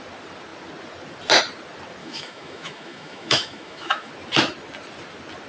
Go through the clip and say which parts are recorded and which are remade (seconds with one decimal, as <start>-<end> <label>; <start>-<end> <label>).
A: 0.0-2.0 recorded; 2.0-4.1 remade; 4.1-5.5 recorded